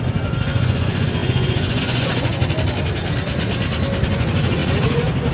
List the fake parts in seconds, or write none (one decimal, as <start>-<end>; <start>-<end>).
0.0-2.4; 4.1-5.3